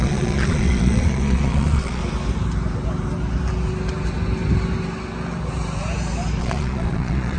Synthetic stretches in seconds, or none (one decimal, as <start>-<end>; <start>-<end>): 0.0-2.0; 6.4-7.4